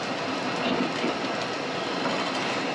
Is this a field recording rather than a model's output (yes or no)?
yes